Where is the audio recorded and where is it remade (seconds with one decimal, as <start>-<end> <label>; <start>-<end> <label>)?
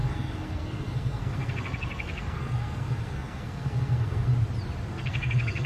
0.0-4.3 remade; 4.3-4.9 recorded; 4.9-5.7 remade